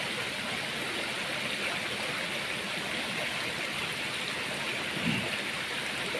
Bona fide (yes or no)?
yes